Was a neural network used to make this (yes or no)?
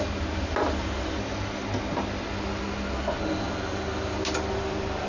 no